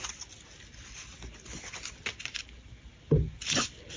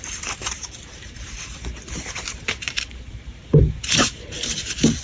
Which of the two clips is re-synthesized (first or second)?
second